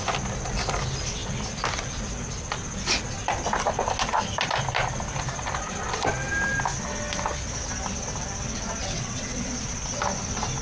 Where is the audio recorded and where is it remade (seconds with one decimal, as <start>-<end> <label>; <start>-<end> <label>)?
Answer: 0.0-8.8 recorded; 8.8-9.5 remade; 9.5-10.6 recorded